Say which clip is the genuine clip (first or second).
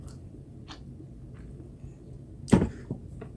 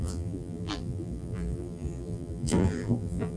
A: first